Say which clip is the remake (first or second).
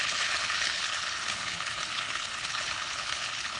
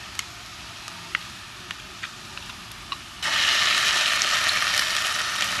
first